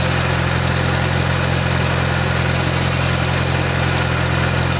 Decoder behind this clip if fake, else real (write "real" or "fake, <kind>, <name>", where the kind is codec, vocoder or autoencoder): real